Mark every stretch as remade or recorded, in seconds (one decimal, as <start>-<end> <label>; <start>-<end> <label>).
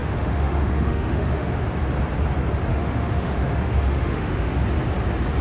0.0-1.5 remade; 1.5-2.7 recorded; 2.7-4.6 remade; 4.6-5.4 recorded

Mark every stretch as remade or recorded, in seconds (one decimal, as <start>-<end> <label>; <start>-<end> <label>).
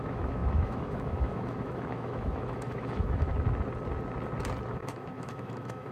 0.0-3.3 remade; 3.3-4.7 recorded; 4.7-5.9 remade